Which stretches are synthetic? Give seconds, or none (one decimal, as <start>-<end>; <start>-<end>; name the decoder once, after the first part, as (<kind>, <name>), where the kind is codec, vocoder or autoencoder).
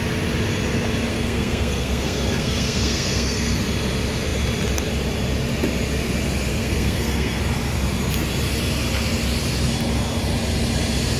1.1-3.6 (codec, SNAC); 6.5-7.4